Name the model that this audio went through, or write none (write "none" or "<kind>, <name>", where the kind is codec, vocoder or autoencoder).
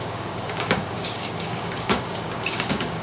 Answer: codec, DAC